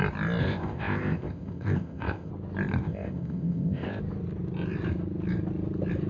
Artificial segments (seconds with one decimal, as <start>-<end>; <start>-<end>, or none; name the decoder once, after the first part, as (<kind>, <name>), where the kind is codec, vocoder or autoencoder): 0.4-2.3 (codec, ZipCodec); 2.8-4.0